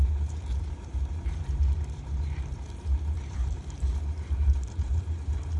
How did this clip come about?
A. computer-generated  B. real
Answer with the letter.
A